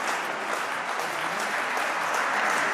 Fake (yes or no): no